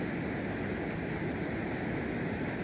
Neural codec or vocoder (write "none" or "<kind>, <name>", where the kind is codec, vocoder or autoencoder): none